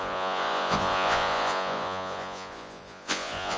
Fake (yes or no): yes